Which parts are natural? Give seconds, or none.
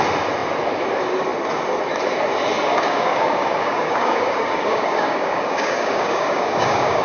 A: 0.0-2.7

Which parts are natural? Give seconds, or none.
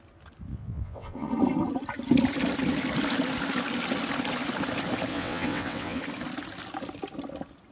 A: 0.0-0.5; 1.3-5.1; 6.0-7.7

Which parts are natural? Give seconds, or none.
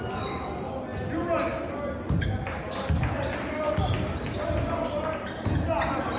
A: 0.0-6.2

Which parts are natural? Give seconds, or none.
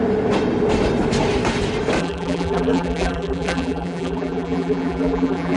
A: 0.0-2.0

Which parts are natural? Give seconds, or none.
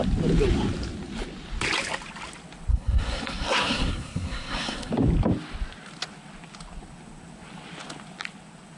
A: 0.0-2.7; 4.9-8.8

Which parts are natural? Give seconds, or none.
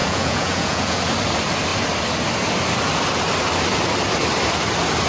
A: 1.0-5.1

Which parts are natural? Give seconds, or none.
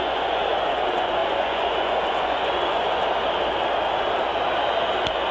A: 3.0-5.3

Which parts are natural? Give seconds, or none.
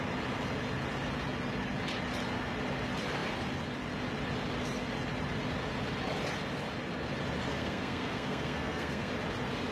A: 0.0-7.5; 9.1-9.7